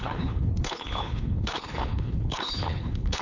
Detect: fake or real fake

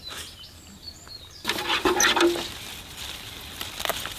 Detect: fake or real fake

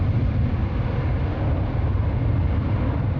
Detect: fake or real real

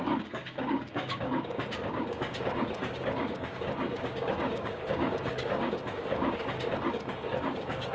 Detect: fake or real fake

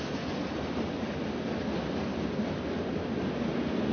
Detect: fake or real real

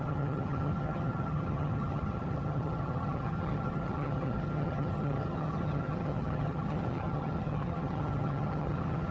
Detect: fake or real fake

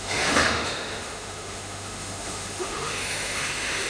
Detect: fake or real fake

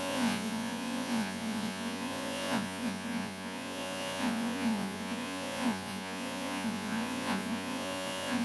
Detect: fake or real fake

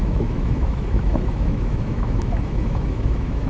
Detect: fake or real fake